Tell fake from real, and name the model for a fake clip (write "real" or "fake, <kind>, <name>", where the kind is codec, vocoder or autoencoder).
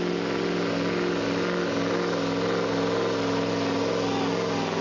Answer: real